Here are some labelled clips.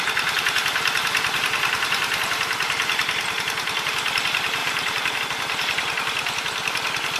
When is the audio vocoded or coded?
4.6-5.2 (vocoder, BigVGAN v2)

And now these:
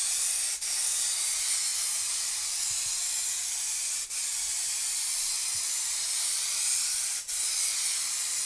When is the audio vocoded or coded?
6.3-7.5 (vocoder, BigVGAN v2)